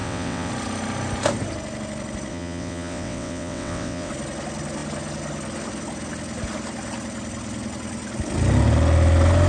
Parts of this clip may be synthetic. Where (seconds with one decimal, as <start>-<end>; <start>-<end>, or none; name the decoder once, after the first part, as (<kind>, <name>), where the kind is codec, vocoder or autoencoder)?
0.0-0.5 (vocoder, WaveNeXt); 2.3-4.1